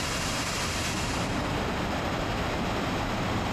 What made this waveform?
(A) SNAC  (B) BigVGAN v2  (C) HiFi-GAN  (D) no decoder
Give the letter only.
D